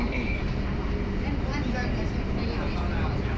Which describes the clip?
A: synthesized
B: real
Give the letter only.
B